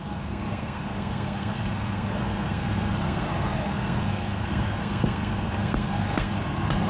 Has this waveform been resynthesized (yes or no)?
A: yes